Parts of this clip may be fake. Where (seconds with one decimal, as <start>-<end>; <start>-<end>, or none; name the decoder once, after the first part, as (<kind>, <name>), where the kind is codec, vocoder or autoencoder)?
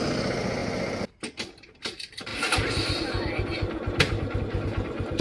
none